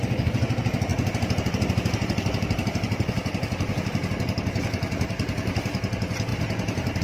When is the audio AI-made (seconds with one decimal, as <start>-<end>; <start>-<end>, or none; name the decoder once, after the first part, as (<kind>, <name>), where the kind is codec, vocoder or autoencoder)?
none